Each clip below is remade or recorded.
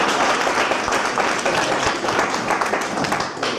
remade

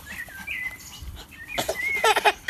remade